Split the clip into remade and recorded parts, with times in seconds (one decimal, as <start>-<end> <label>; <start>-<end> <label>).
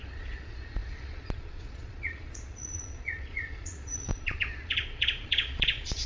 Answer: 0.0-6.1 remade